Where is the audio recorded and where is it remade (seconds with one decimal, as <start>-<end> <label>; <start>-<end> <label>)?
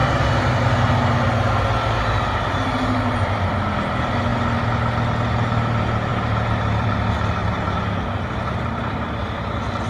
0.0-6.1 recorded; 6.1-6.9 remade; 6.9-7.4 recorded; 7.4-9.1 remade; 9.1-9.9 recorded